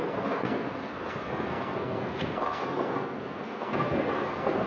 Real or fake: fake